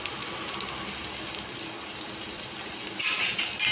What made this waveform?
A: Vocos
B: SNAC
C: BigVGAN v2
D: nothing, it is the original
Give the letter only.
D